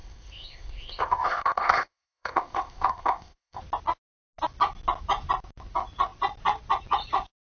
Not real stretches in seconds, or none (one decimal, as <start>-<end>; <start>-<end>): 0.0-3.6